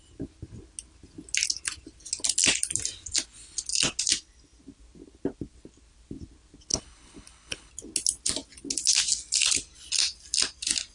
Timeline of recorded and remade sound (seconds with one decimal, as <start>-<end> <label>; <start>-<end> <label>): 0.0-6.7 recorded; 6.7-7.7 remade; 7.7-10.9 recorded